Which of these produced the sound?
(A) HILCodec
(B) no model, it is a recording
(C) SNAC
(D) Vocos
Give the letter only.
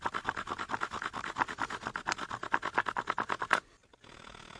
B